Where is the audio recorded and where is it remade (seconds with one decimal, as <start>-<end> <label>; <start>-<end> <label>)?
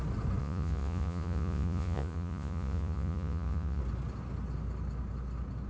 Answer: 0.0-0.4 recorded; 0.4-3.8 remade; 3.8-5.7 recorded